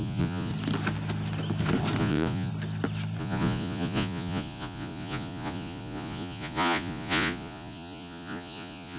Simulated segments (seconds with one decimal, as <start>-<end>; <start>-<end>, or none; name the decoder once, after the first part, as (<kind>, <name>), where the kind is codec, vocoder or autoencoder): 0.0-0.5 (vocoder, Vocos); 2.0-2.5; 3.2-9.0